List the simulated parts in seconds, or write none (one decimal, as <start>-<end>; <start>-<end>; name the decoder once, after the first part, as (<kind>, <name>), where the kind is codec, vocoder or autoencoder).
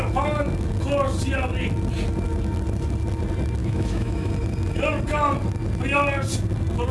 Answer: 3.6-4.3 (autoencoder, DAC-VAE)